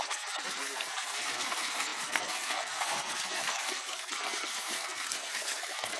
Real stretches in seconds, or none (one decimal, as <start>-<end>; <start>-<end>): none